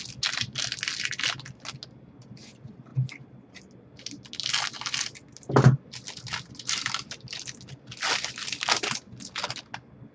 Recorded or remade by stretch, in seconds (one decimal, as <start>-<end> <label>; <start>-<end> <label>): 0.0-10.1 recorded